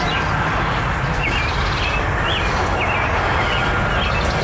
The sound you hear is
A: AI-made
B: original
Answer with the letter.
B